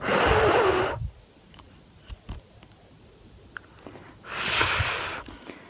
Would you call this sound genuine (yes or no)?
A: yes